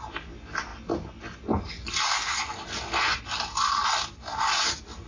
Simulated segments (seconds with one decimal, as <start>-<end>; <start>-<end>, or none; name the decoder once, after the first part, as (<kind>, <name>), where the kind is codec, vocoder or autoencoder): none